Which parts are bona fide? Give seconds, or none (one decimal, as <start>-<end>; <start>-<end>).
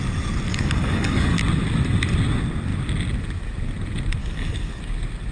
0.0-0.5; 1.4-4.2; 4.8-5.3